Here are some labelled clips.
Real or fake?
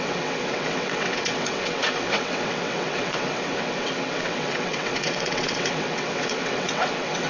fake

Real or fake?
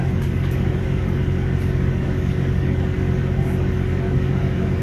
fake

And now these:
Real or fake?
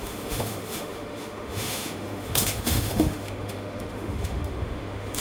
fake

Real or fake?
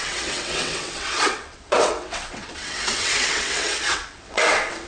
fake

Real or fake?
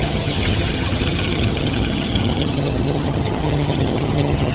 fake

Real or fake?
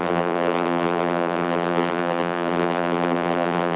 fake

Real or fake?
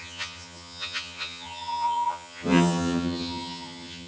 fake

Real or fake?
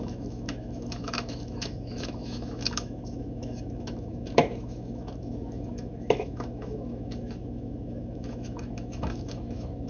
fake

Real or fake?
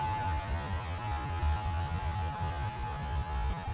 real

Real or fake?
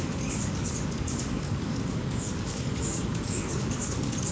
fake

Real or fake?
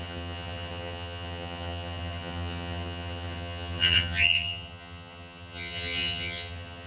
fake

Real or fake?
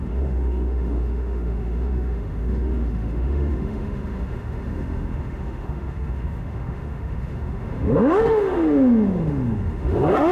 fake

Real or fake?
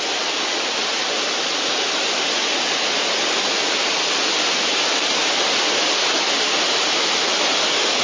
real